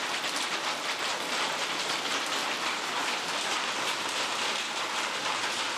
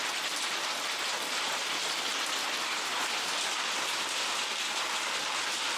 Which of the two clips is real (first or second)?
second